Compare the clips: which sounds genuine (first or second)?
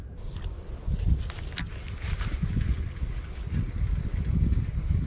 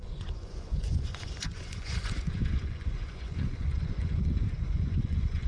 first